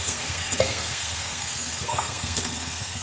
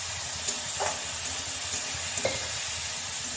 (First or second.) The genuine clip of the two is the second